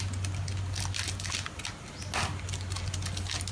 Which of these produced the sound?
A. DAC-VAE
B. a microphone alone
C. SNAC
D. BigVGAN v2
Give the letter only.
B